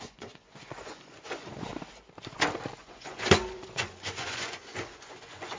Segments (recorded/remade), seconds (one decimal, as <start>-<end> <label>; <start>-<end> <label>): 0.0-1.7 remade; 1.7-2.8 recorded; 2.8-5.6 remade